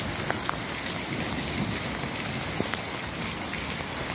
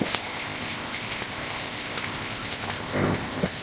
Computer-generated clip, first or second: second